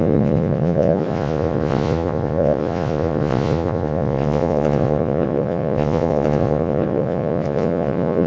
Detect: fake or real fake